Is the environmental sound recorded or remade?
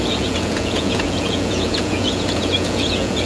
remade